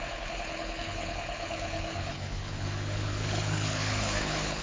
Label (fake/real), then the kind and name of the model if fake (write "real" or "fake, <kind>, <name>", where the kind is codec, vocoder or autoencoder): fake, codec, HILCodec